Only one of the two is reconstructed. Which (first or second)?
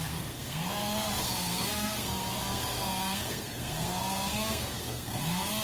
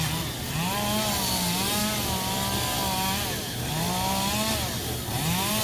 first